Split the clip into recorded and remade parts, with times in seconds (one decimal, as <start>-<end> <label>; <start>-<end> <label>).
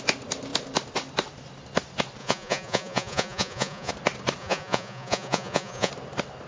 0.0-2.2 recorded; 2.2-3.9 remade; 3.9-4.4 recorded; 4.4-5.9 remade; 5.9-6.5 recorded